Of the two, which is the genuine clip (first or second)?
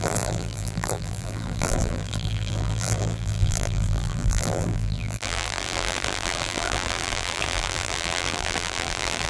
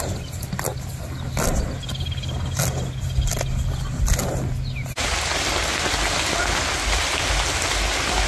second